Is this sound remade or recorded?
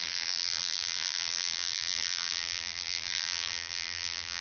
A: remade